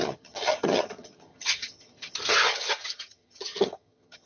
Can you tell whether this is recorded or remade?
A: remade